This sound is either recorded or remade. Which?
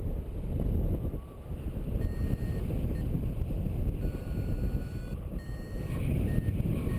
recorded